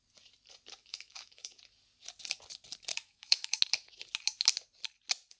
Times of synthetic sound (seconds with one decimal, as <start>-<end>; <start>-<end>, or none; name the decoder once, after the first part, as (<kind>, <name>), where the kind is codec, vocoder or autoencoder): 0.8-1.6 (autoencoder, DAC-VAE); 2.9-3.6